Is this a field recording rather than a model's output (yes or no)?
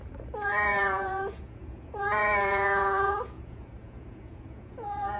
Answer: no